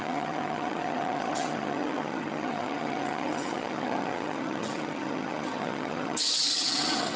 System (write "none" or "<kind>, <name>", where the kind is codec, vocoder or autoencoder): vocoder, HiFi-GAN